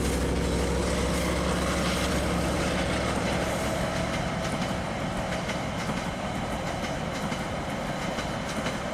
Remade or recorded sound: recorded